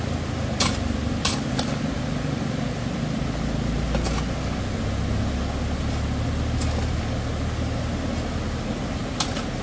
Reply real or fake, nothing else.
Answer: real